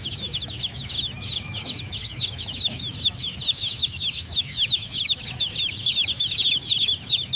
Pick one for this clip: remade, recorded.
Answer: remade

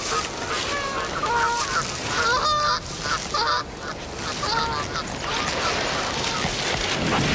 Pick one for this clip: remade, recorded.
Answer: recorded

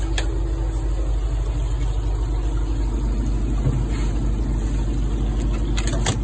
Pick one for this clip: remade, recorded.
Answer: recorded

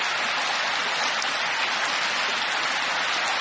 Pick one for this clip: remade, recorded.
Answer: recorded